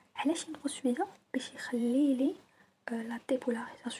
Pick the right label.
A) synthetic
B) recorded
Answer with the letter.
A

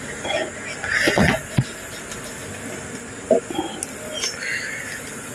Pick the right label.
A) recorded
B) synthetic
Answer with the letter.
A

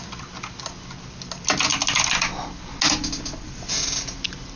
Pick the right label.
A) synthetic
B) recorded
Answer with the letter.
B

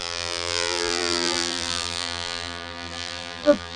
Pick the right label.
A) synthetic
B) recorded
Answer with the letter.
A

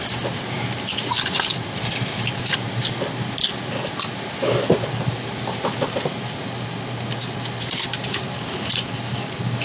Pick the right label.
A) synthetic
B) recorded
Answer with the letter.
B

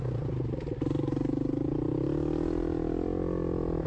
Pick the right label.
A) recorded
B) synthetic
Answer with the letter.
A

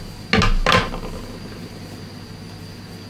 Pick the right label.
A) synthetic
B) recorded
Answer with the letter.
B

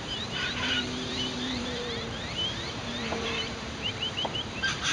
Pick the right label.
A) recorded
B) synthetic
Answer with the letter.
B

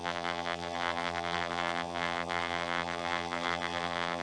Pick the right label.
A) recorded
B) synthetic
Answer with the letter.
B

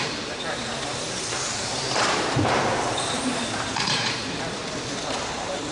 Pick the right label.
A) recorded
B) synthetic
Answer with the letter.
B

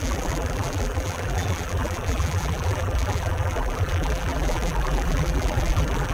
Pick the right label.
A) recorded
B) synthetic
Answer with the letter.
B